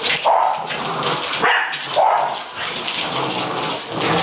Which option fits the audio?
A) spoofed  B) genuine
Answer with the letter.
B